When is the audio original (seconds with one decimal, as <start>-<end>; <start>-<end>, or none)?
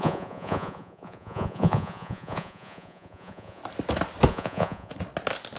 3.6-4.3; 4.9-5.6